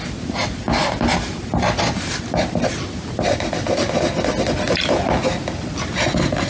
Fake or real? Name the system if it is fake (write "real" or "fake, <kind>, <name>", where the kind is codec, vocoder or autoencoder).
real